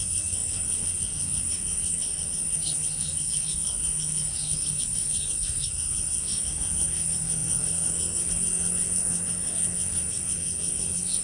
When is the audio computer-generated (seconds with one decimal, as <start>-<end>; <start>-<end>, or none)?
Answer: 0.0-11.2